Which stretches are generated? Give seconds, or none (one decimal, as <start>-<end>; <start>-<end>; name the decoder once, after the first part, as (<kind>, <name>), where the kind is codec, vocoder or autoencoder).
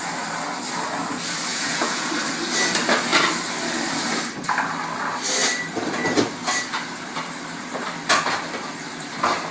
1.5-2.1 (vocoder, Vocos)